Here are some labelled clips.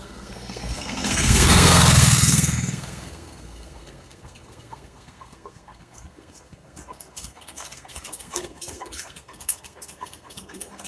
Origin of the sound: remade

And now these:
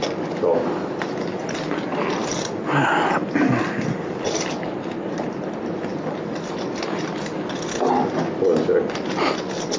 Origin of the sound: recorded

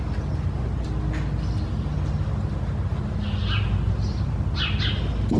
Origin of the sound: recorded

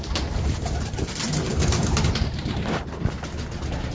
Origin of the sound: recorded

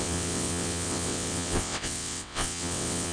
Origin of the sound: remade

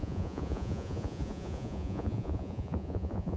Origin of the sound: remade